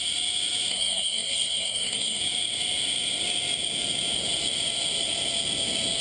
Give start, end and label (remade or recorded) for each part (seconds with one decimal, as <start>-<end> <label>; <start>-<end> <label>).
0.0-0.7 recorded; 0.7-2.2 remade; 2.2-6.0 recorded